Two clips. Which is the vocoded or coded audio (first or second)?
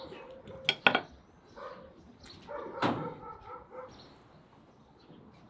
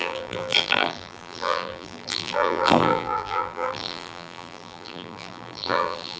second